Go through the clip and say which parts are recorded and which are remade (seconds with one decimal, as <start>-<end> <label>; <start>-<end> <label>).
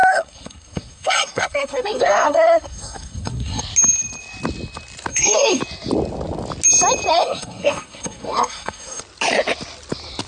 0.0-3.6 remade; 3.6-5.1 recorded; 5.1-5.6 remade; 5.6-7.1 recorded; 7.1-9.0 remade; 9.0-10.3 recorded